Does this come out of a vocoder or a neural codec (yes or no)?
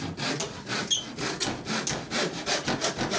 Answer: no